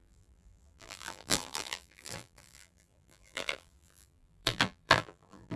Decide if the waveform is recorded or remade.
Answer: remade